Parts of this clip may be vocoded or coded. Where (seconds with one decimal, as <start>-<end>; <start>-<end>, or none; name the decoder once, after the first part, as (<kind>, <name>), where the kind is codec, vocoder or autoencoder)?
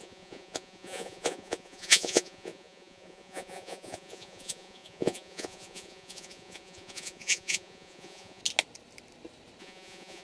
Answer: 0.0-8.4 (vocoder, Vocos); 9.6-10.2